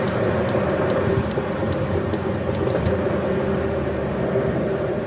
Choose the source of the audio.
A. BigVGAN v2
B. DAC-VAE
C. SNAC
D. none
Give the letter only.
D